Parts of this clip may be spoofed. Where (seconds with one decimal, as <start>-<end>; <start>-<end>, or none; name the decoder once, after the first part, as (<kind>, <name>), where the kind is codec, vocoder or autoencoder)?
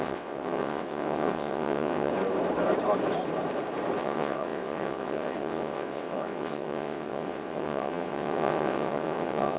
0.0-2.1 (vocoder, WaveNeXt); 4.0-9.6